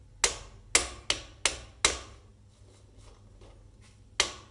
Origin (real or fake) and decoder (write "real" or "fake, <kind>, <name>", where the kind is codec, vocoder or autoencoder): real